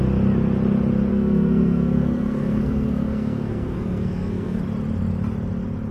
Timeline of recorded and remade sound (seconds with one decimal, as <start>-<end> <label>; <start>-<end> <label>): 0.0-1.1 recorded; 1.1-4.6 remade; 4.6-5.9 recorded